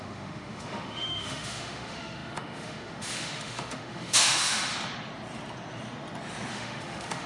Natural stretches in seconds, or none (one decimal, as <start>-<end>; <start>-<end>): 4.7-6.5